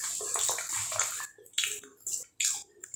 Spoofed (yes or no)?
no